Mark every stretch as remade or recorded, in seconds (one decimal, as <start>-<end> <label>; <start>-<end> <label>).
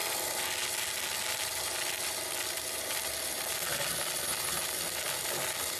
0.0-5.8 recorded